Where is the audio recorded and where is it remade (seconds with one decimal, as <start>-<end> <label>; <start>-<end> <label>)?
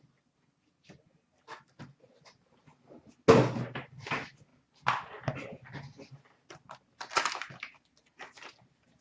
0.0-9.0 recorded